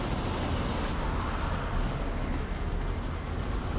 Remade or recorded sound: recorded